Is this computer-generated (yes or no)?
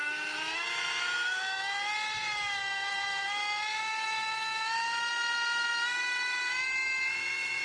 yes